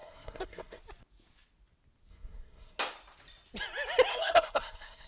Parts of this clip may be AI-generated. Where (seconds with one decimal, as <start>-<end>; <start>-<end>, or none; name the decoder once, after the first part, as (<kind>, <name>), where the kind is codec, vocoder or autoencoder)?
0.0-0.8 (codec, SNAC); 2.1-2.8; 4.1-5.1